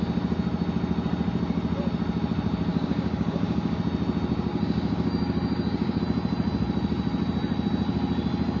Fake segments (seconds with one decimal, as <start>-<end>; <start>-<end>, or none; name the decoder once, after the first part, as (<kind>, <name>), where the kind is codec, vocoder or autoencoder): 2.7-3.8 (codec, DAC); 4.5-6.0